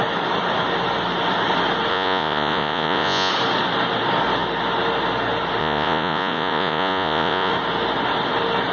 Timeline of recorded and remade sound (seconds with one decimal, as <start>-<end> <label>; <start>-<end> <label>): 0.0-1.9 recorded; 1.9-3.3 remade; 3.3-5.6 recorded; 5.6-7.5 remade; 7.5-8.7 recorded